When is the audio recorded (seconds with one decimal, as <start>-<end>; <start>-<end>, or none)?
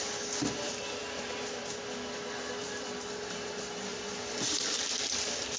0.0-5.6